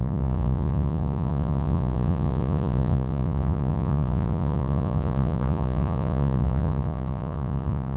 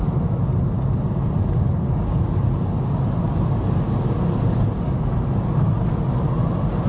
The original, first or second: second